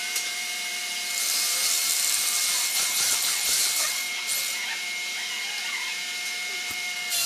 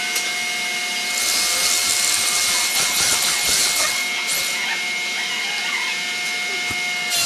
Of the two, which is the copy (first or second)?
first